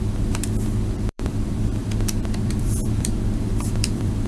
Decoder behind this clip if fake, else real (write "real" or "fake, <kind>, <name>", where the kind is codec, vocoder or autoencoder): fake, vocoder, BigVGAN v2